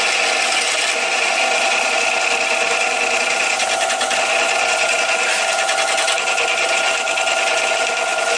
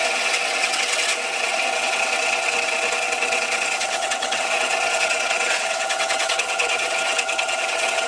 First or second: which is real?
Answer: first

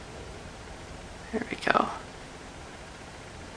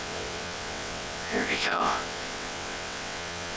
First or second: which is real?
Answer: first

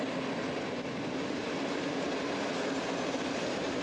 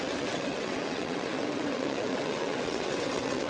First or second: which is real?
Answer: first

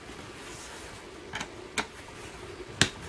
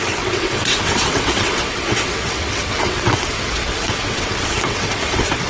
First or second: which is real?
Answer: first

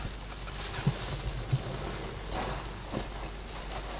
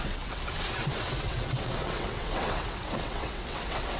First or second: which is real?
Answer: first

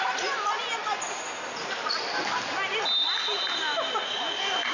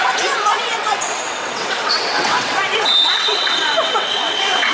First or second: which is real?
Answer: first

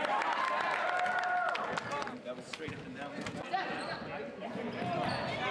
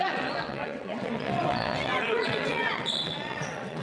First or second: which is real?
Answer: first